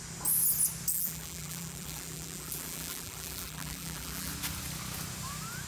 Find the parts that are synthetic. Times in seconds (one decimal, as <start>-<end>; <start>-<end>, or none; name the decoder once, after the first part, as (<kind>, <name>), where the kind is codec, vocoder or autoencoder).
0.9-4.3 (vocoder, BigVGAN v2)

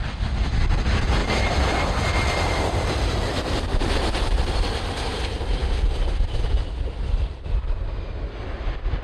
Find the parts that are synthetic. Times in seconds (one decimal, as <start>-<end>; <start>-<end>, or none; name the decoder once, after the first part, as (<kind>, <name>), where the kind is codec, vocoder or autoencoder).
1.2-4.8 (vocoder, BigVGAN v2)

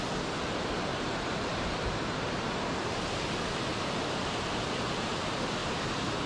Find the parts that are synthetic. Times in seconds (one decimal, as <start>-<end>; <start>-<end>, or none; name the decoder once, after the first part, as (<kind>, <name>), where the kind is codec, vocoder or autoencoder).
0.9-4.7 (vocoder, BigVGAN v2)

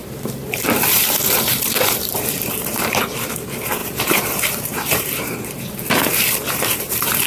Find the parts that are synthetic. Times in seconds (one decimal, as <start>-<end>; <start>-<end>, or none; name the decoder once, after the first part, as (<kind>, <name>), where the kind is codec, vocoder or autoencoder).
0.0-7.3 (vocoder, BigVGAN v2)

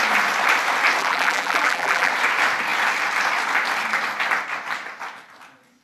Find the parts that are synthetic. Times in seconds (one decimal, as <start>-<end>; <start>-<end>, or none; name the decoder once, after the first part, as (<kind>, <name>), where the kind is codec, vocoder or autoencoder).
1.0-2.1 (vocoder, BigVGAN v2)

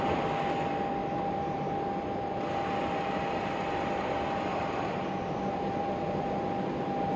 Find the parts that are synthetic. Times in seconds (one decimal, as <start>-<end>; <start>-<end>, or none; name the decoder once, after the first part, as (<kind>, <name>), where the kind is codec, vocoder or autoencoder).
1.0-1.7 (vocoder, BigVGAN v2); 4.5-5.9

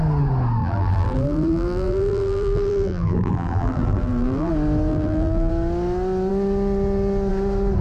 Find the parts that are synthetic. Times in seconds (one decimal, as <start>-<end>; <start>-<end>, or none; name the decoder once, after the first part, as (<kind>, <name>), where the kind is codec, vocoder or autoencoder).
0.6-4.5 (vocoder, BigVGAN v2); 4.9-5.5

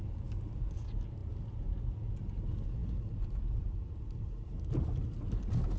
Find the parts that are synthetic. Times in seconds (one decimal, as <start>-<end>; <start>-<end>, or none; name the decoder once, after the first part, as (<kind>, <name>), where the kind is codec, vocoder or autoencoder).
2.8-4.6 (vocoder, BigVGAN v2)